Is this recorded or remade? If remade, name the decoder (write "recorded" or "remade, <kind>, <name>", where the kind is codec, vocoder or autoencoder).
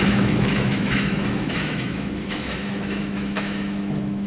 remade, autoencoder, DAC-VAE